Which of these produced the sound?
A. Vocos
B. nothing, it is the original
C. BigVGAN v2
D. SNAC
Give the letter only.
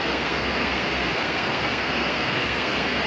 D